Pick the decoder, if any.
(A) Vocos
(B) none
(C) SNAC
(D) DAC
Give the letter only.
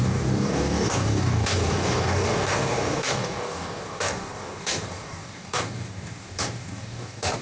D